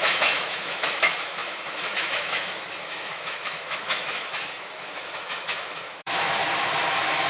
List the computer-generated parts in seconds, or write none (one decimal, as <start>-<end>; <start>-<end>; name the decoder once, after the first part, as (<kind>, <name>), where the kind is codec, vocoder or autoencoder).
0.0-6.4 (autoencoder, DAC-VAE)